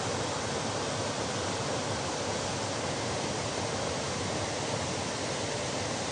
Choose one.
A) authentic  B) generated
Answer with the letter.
A